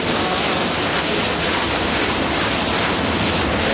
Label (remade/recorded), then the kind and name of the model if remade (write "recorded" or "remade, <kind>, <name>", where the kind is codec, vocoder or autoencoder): recorded